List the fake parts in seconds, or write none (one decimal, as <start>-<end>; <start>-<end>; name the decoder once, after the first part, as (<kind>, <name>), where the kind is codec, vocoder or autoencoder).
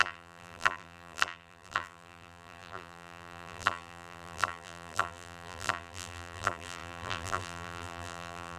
0.0-8.6 (vocoder, BigVGAN v2)